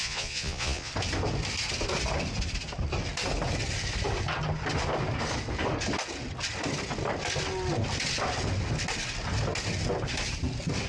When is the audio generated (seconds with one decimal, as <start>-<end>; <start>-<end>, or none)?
0.0-0.9